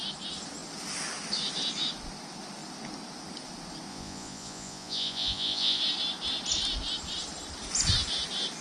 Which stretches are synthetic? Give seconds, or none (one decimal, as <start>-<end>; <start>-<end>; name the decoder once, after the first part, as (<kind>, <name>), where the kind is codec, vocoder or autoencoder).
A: 3.9-5.8 (vocoder, Vocos)

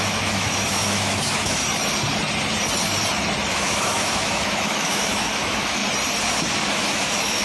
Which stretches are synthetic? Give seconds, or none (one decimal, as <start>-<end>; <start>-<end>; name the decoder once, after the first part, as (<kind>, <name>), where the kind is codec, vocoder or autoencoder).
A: 0.0-1.6 (autoencoder, DAC-VAE); 3.5-5.8; 6.7-7.4

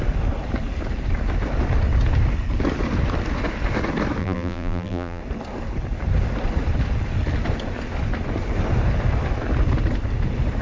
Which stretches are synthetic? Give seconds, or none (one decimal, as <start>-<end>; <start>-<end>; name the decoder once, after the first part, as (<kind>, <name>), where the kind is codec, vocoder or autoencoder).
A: 4.2-5.2 (vocoder, BigVGAN v2)

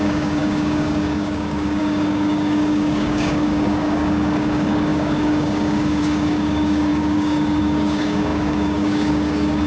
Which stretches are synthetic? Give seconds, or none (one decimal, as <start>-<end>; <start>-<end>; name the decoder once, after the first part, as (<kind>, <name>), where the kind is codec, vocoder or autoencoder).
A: 0.0-9.7 (codec, DAC)

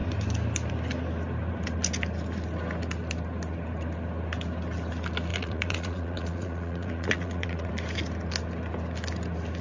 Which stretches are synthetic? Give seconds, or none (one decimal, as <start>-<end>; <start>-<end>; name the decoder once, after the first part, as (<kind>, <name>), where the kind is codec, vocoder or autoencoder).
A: 5.3-7.7 (vocoder, Vocos)

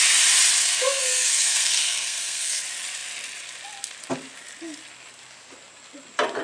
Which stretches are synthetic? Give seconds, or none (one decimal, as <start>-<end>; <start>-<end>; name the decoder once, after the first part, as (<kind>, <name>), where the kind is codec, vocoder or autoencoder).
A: 0.6-2.6 (codec, SNAC)

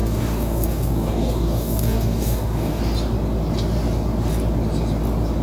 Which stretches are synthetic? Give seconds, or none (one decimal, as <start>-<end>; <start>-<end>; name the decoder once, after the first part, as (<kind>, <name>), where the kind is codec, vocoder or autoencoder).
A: 0.0-2.8 (codec, DAC)